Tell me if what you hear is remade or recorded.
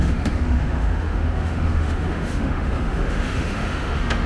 remade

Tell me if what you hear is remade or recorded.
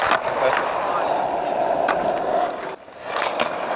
recorded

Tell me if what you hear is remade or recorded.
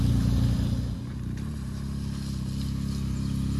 recorded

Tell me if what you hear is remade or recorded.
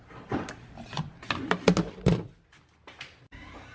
recorded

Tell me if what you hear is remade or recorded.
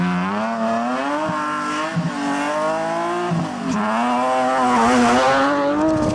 recorded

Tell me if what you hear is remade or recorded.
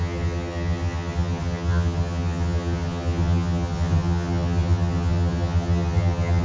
remade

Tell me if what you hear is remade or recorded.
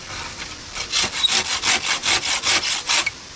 recorded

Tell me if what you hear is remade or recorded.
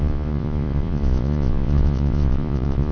remade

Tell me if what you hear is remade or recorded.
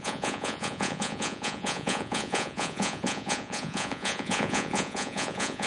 remade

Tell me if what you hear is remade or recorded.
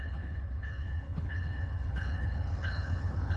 remade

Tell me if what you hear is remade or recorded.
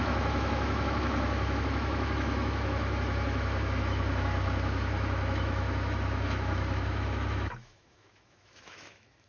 remade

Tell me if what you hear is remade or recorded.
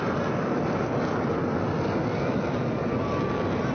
recorded